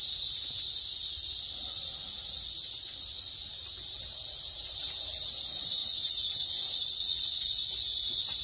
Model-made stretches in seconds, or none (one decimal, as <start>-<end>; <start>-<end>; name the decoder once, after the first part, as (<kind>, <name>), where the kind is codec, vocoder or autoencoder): none